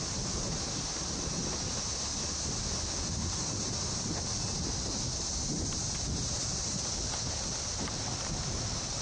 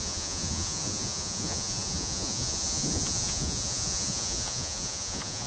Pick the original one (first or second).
first